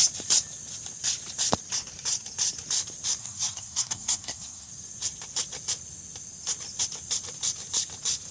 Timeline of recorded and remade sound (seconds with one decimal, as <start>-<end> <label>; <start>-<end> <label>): 0.0-3.2 recorded; 3.2-4.7 remade; 4.7-8.3 recorded